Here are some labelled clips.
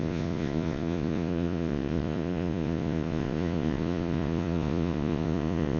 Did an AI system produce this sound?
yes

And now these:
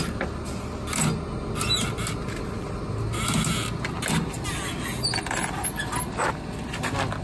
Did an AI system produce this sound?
no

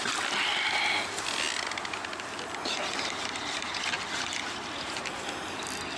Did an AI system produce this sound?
no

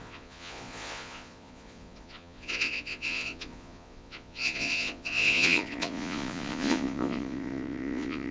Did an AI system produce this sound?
yes